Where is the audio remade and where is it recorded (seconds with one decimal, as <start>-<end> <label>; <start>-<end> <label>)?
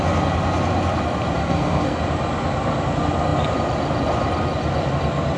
0.0-1.4 recorded; 1.4-2.0 remade; 2.0-5.4 recorded